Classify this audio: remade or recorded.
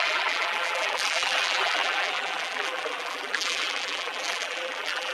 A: remade